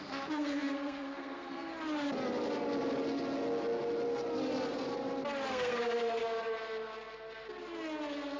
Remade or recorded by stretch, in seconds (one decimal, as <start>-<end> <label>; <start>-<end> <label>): 0.0-1.7 remade; 1.7-5.5 recorded; 5.5-6.2 remade; 6.2-8.4 recorded